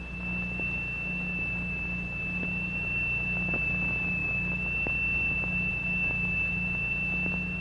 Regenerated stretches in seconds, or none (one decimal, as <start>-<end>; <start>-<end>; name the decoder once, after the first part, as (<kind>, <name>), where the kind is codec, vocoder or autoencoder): none